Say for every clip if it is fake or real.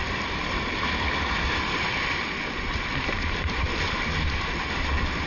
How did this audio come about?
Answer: real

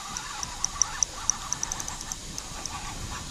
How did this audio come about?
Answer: real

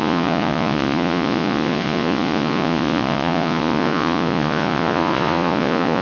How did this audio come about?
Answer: fake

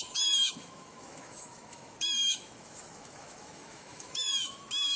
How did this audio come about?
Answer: fake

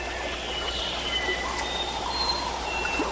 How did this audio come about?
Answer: fake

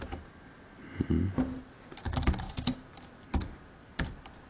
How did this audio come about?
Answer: real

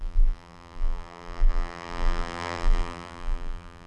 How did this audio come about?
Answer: fake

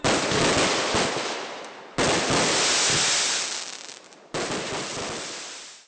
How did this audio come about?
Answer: real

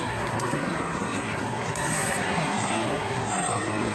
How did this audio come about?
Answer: fake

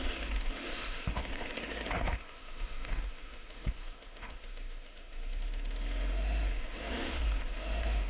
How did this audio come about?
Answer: fake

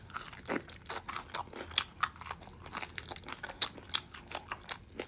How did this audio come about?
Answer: real